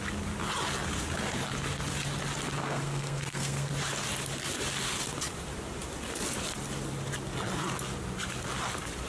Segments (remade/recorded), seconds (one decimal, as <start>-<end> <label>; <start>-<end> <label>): 0.0-2.6 recorded; 2.6-3.7 remade; 3.7-9.1 recorded